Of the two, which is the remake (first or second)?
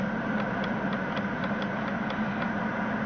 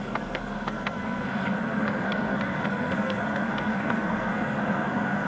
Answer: second